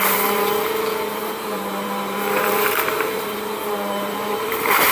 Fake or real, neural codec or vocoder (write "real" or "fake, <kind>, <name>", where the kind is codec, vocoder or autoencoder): fake, vocoder, BigVGAN v2